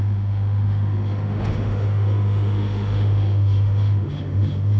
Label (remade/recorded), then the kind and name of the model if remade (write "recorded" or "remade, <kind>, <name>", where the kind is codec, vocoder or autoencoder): remade, autoencoder, DAC-VAE